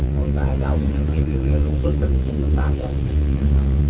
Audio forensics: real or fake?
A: fake